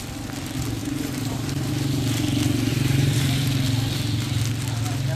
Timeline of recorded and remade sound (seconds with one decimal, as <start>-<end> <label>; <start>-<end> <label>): 0.0-0.8 recorded; 0.8-1.7 remade; 1.7-2.7 recorded; 2.7-3.5 remade; 3.5-5.2 recorded